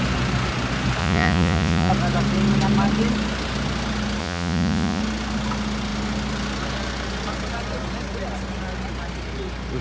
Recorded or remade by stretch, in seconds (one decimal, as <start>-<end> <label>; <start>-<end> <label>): 0.0-1.0 recorded; 1.0-1.9 remade; 1.9-4.2 recorded; 4.2-5.0 remade; 5.0-9.8 recorded